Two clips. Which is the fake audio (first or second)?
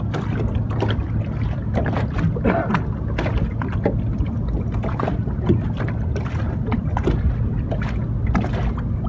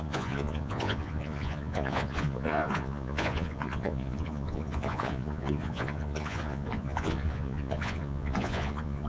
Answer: second